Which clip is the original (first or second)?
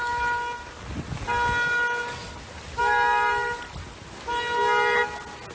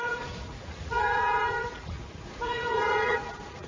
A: first